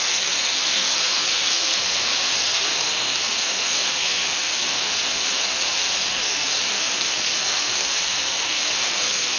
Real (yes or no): no